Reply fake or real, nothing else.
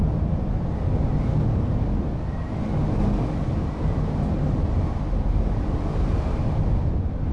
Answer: real